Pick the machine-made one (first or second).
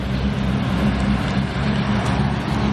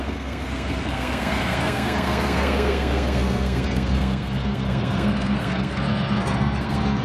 second